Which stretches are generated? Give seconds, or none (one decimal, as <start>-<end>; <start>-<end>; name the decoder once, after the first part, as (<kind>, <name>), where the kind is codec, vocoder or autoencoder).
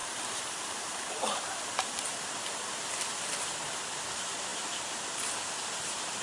none